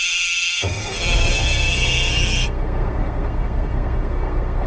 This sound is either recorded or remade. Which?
remade